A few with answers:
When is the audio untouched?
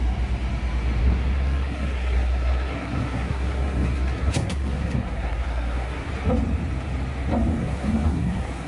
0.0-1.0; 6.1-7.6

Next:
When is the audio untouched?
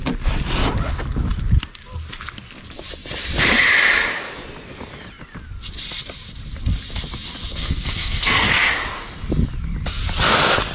0.0-7.6; 8.7-10.7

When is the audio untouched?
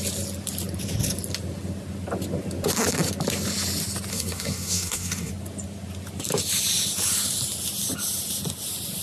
0.0-4.1; 5.3-9.0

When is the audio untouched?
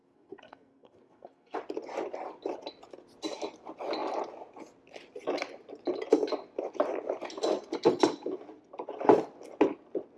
1.6-10.2